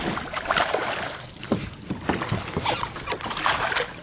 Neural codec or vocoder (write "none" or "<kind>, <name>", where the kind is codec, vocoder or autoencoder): none